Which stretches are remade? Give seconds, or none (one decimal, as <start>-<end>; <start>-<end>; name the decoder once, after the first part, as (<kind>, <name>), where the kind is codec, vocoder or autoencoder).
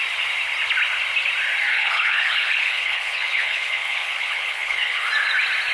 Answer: 1.7-5.1 (codec, HILCodec)